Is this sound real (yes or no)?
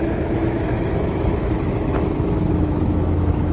no